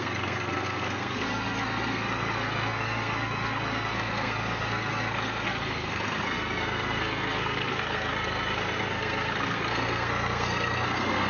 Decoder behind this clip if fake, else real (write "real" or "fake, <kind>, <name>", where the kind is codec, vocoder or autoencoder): fake, codec, SNAC